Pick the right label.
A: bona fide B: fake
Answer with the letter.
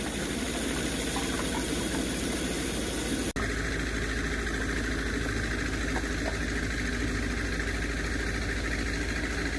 A